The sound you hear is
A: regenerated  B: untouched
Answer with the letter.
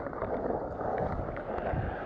A